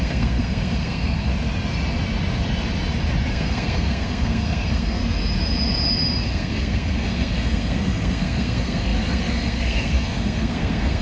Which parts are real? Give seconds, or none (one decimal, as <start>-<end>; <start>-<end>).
1.3-3.3; 5.0-6.2